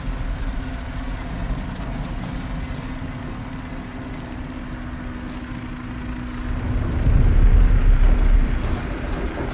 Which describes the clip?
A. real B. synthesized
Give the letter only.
A